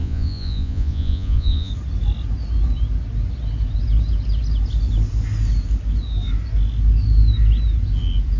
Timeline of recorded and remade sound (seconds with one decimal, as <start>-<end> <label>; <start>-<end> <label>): 0.0-1.7 remade; 1.7-8.4 recorded